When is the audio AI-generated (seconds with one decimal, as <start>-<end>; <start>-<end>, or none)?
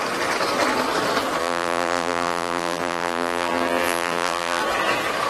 1.4-4.6